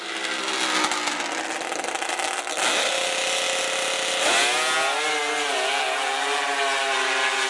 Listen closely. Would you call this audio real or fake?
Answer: real